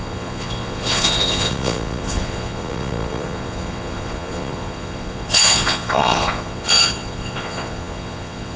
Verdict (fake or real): fake